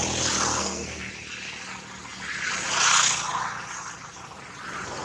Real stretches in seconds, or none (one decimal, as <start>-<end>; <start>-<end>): 0.0-0.5; 1.1-5.0